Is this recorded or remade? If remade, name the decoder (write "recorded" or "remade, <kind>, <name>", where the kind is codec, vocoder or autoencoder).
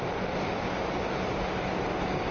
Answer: recorded